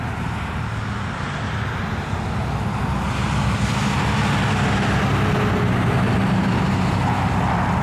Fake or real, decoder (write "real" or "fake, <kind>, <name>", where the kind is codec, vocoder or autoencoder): real